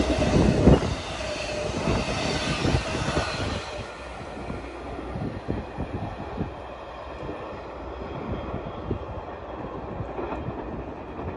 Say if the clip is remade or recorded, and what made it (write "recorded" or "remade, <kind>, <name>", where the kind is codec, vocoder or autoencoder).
recorded